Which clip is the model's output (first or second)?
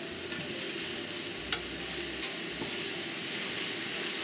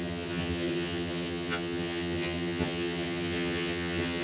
second